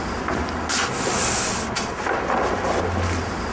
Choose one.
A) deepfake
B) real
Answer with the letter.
B